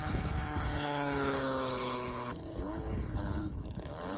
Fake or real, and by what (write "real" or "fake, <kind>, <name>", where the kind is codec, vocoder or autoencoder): fake, codec, HILCodec